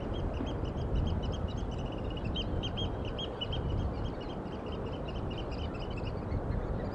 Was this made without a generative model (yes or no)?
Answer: yes